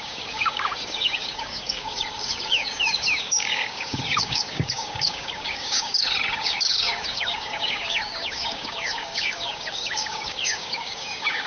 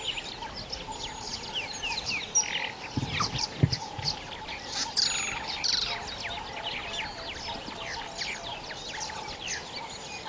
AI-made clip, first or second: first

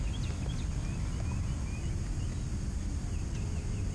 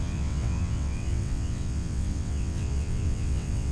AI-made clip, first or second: second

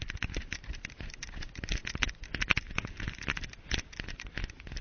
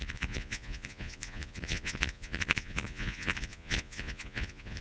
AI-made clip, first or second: second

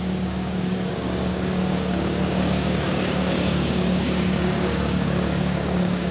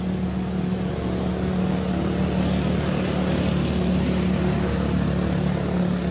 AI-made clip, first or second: first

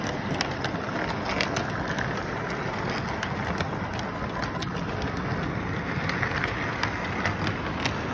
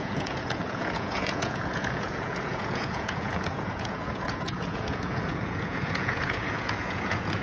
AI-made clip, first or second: second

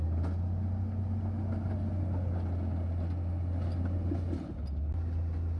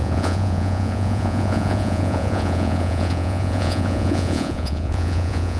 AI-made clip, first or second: second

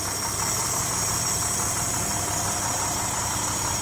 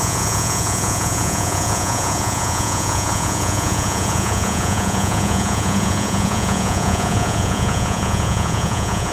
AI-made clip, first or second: second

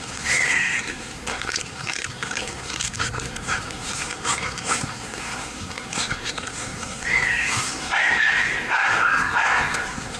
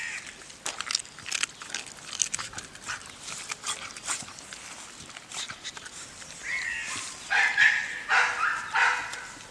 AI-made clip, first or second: first